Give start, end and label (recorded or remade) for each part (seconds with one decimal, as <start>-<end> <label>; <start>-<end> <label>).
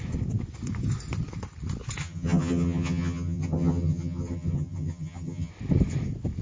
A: 0.0-2.0 recorded; 2.0-5.5 remade; 5.5-6.4 recorded